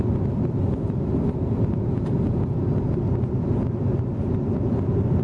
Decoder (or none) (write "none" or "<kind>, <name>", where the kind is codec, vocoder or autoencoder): none